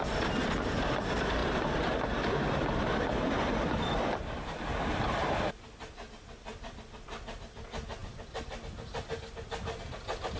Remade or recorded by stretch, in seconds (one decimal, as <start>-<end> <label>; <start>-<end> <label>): 0.0-10.4 recorded